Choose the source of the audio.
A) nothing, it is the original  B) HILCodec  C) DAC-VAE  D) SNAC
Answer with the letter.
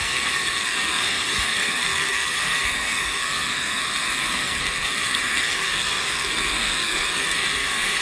D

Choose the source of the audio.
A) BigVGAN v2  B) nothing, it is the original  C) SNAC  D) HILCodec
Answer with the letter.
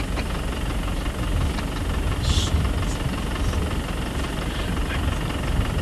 B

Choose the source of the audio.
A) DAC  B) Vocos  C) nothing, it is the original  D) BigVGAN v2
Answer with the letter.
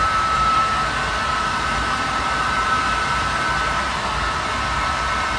D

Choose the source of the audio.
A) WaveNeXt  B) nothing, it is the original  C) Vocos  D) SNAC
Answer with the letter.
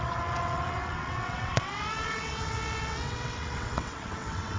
A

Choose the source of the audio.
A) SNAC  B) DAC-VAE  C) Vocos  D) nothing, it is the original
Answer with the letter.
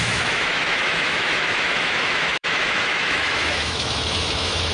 B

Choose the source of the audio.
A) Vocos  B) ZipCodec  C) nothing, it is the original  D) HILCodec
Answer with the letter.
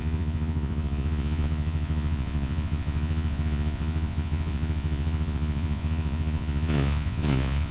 A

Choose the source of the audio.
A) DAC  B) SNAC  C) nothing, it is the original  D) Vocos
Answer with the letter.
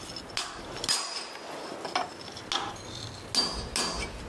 C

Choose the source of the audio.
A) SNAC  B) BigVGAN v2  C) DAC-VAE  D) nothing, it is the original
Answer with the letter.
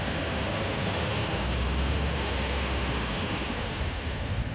C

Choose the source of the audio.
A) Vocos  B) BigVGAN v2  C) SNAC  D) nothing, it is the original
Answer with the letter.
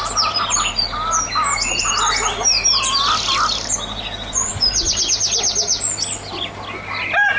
D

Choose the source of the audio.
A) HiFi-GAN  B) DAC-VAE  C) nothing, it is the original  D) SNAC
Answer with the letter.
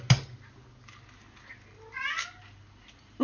C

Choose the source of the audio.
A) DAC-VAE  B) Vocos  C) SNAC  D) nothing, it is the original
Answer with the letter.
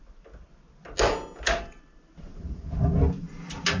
D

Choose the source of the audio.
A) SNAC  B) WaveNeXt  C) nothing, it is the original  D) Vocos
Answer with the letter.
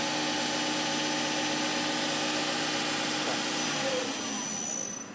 C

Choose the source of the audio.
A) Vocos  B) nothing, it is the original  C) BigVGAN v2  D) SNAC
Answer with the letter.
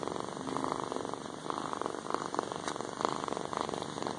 B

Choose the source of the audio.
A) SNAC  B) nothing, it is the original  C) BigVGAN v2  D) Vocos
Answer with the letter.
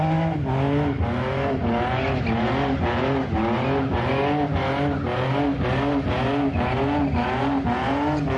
B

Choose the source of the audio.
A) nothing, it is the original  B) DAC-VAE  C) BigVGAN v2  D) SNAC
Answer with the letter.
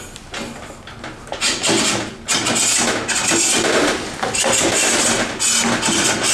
A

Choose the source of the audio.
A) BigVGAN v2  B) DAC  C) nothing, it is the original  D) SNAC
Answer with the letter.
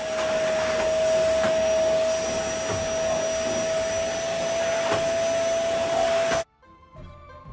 C